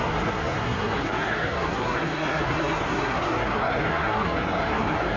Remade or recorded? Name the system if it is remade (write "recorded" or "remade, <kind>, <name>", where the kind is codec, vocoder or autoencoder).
remade, codec, SNAC